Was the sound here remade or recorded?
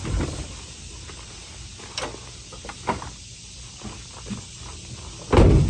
recorded